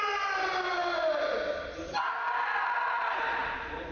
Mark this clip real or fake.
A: real